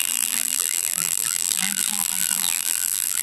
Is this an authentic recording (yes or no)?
no